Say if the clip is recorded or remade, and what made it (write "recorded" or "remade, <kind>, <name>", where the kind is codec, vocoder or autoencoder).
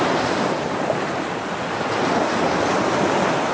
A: recorded